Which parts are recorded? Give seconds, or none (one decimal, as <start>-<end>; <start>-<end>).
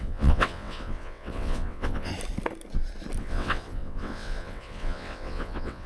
2.1-3.2